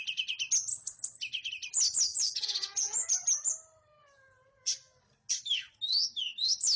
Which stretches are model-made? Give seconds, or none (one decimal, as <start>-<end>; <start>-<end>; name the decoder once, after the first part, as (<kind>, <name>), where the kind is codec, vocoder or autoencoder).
2.1-3.1 (vocoder, Vocos); 4.0-4.7